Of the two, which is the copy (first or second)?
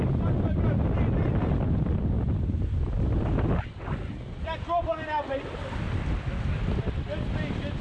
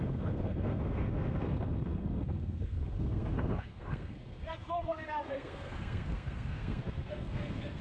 second